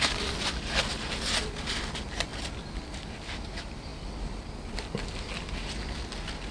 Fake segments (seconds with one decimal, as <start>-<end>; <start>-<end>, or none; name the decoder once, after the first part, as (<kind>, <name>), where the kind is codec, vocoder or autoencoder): none